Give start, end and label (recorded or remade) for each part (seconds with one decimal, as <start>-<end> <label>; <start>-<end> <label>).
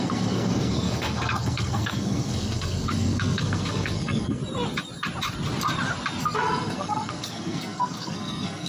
0.0-4.4 remade; 4.4-6.2 recorded; 6.2-8.7 remade